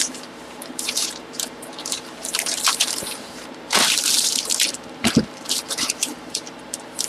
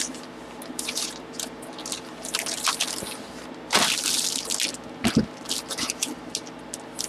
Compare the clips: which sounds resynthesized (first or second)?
first